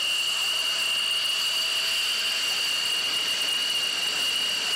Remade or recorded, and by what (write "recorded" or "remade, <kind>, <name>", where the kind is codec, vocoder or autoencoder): recorded